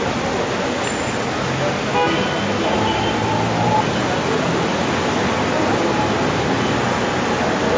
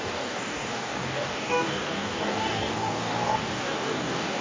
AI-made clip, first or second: second